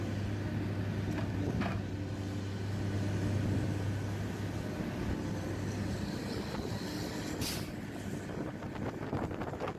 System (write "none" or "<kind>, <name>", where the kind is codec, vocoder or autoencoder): none